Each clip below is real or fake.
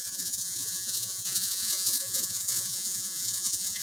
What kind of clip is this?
fake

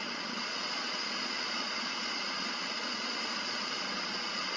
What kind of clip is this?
fake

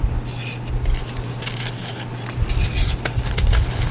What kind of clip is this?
real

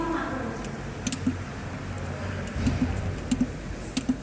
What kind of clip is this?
real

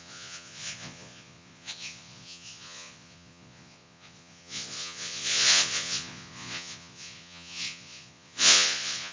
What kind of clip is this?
fake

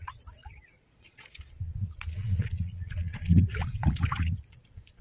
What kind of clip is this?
fake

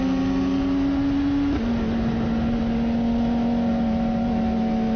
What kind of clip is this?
real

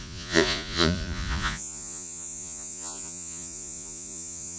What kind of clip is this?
fake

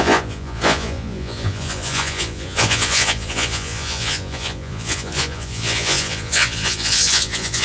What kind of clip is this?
fake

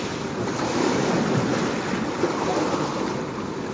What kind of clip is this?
real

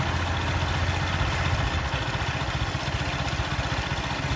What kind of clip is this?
real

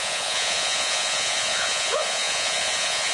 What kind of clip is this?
fake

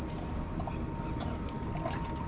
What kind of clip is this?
real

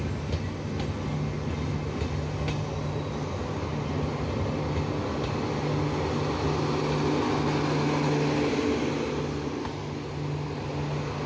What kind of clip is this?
real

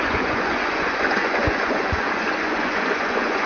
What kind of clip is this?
fake